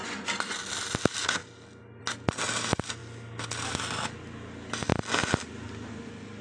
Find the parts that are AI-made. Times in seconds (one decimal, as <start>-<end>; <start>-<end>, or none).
none